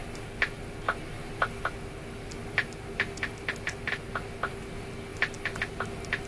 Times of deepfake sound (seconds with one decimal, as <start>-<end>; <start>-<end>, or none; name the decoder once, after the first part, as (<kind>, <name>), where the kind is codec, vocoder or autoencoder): none